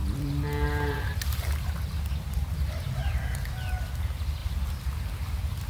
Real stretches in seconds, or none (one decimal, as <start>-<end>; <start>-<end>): 0.0-5.7